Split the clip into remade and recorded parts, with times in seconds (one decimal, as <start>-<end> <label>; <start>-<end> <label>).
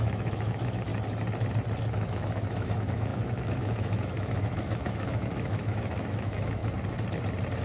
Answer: 0.0-0.9 remade; 0.9-1.9 recorded; 1.9-6.6 remade; 6.6-7.6 recorded